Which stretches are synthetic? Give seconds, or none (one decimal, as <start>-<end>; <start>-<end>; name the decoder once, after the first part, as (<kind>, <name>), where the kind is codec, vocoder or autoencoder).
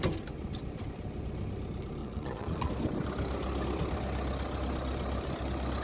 2.0-2.7 (vocoder, Vocos)